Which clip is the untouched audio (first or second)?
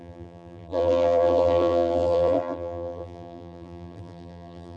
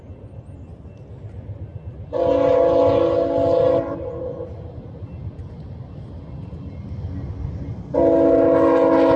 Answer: second